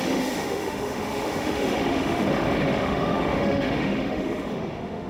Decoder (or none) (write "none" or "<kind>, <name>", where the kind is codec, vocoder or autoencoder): autoencoder, DAC-VAE